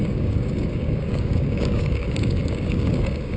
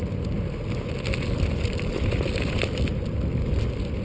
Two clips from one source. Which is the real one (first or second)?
second